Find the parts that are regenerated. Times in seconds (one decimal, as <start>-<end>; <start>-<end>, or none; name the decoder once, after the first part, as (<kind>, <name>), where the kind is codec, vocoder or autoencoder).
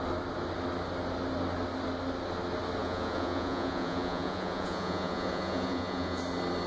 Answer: 2.8-6.2 (vocoder, Vocos)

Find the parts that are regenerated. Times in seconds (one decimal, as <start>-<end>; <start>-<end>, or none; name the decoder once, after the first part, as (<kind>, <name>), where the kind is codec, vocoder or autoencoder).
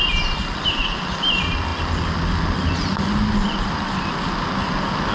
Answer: none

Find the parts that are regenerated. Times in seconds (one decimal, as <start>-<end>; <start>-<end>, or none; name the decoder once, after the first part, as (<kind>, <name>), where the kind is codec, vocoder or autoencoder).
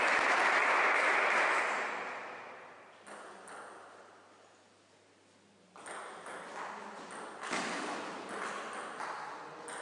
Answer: none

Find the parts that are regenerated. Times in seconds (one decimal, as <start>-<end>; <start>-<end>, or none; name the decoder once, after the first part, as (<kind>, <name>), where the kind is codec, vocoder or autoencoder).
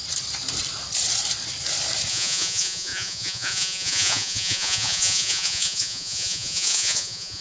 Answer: 2.1-7.4 (vocoder, Vocos)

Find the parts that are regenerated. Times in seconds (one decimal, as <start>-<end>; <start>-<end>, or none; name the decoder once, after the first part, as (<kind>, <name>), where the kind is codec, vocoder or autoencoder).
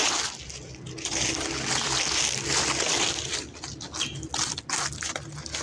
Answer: none